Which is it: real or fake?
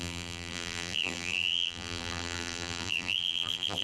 fake